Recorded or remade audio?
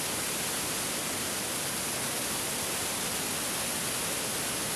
recorded